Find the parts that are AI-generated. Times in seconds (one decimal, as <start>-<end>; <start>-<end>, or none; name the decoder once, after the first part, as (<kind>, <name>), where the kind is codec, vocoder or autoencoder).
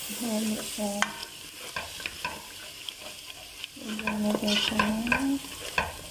none